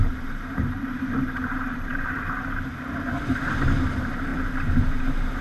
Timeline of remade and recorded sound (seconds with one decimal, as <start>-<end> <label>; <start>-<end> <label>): 0.0-5.4 remade